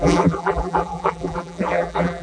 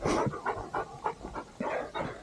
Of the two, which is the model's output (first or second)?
first